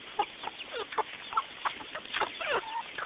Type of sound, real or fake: real